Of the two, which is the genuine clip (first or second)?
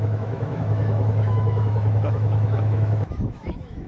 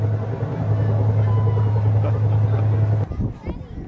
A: second